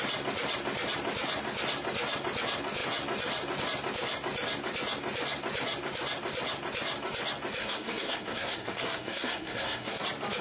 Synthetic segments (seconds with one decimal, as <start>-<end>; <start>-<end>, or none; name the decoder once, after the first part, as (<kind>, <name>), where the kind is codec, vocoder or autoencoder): 7.6-10.0 (codec, SNAC)